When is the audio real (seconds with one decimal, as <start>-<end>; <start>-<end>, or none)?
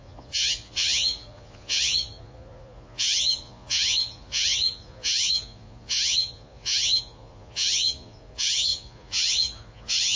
none